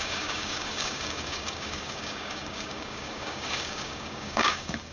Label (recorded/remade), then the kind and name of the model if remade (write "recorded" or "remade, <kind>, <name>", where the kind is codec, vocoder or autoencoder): remade, codec, DAC